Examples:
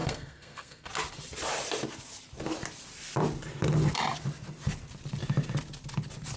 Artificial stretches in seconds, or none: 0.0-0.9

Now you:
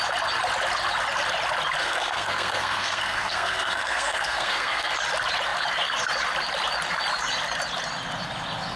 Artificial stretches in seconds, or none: 1.8-4.9

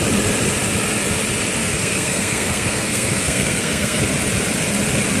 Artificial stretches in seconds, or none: 1.6-4.0

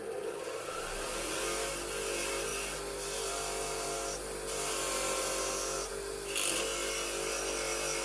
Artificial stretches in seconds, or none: none